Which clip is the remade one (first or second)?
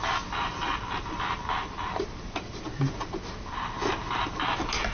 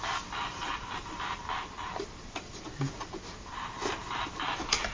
second